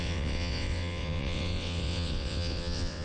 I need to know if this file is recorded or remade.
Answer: remade